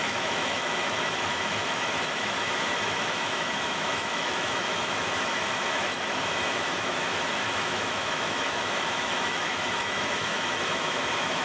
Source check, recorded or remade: remade